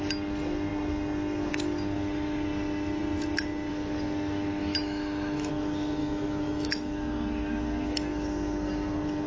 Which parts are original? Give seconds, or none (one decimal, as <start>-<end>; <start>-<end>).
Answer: 0.0-4.6; 5.5-6.0; 6.9-9.3